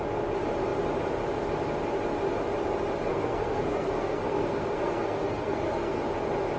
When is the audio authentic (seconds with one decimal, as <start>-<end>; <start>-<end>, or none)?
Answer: 0.0-3.1; 6.0-6.6